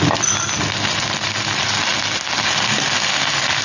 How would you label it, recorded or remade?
recorded